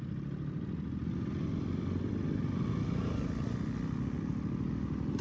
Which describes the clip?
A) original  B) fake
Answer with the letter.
A